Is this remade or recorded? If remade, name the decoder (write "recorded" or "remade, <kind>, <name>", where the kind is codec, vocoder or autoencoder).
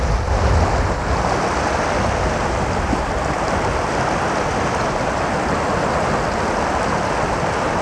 recorded